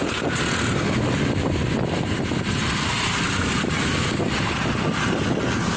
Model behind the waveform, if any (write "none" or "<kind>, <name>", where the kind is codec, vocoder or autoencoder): none